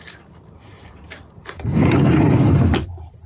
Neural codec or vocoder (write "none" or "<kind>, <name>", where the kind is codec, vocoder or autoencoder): vocoder, BigVGAN v2